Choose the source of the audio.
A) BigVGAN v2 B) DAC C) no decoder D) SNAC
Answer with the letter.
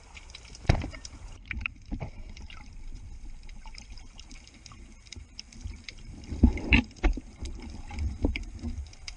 A